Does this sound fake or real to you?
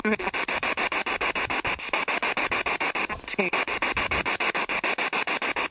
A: real